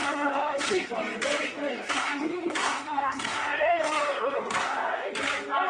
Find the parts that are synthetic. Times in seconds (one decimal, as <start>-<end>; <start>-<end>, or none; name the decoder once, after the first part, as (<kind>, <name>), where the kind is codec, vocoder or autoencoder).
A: 0.0-0.9 (codec, SNAC); 1.7-5.1